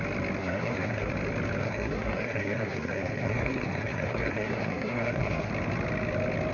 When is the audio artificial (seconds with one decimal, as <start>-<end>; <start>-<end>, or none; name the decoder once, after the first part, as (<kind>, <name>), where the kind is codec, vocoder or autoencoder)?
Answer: 0.4-1.1 (codec, SNAC); 1.6-5.5